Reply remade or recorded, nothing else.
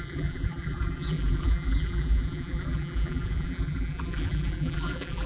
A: remade